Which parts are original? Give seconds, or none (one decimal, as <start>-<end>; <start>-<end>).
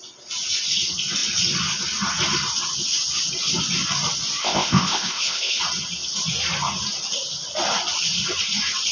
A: 0.0-4.4; 5.6-8.9